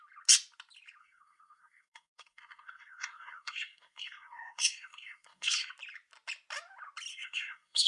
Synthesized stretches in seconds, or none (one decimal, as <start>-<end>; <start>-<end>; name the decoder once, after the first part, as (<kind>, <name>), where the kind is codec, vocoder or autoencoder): 1.0-5.7 (codec, SNAC); 7.1-7.9